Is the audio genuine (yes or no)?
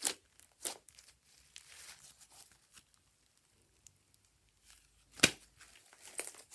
yes